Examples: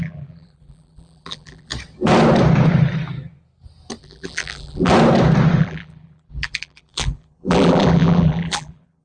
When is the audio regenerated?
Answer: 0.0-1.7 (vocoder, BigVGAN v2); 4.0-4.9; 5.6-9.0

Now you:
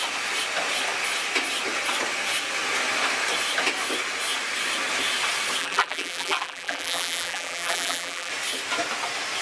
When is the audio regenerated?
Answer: 5.6-8.3 (vocoder, BigVGAN v2)

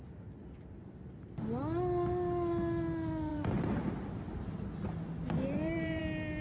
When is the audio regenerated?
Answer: 3.3-3.9 (vocoder, BigVGAN v2); 5.2-6.0

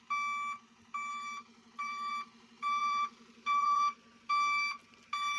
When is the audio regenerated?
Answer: 1.1-4.3 (vocoder, BigVGAN v2)

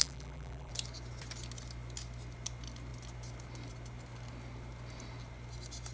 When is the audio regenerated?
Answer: 0.0-0.7 (vocoder, BigVGAN v2)

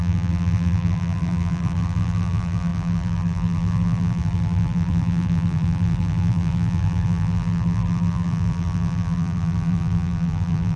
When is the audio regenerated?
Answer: 0.0-10.8 (vocoder, BigVGAN v2)

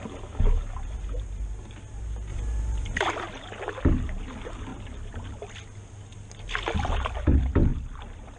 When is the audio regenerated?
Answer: 4.7-5.5 (vocoder, BigVGAN v2); 7.7-8.4

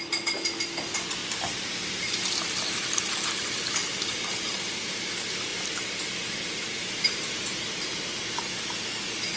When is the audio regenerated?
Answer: 1.2-4.7 (vocoder, BigVGAN v2); 5.5-8.2